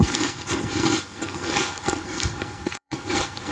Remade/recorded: remade